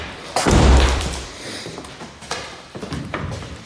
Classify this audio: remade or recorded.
remade